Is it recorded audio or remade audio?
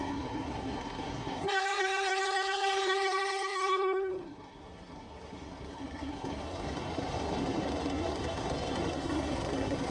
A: remade